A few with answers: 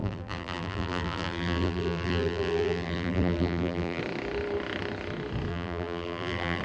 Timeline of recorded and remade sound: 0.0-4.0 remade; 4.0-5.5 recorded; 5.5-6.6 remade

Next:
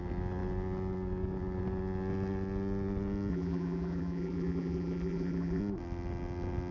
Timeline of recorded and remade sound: 0.0-3.3 recorded; 3.3-5.6 remade; 5.6-6.7 recorded

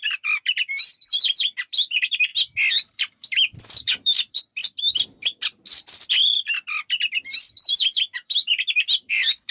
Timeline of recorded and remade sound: 0.0-2.3 remade; 2.3-2.9 recorded; 2.9-4.6 remade; 4.6-6.1 recorded; 6.1-9.5 remade

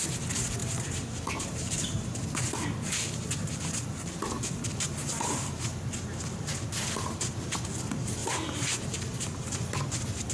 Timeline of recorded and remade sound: 0.0-0.6 recorded; 0.6-2.4 remade; 2.4-5.0 recorded; 5.0-5.7 remade; 5.7-8.2 recorded; 8.2-9.8 remade; 9.8-10.3 recorded

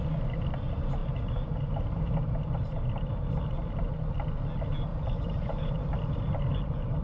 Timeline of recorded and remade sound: 0.0-1.0 recorded; 1.0-2.3 remade; 2.3-2.7 recorded; 2.7-3.8 remade; 3.8-4.9 recorded; 4.9-6.5 remade; 6.5-7.0 recorded

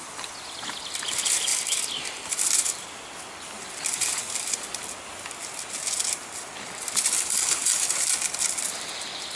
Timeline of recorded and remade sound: 0.0-1.5 recorded; 1.5-2.7 remade; 2.7-9.4 recorded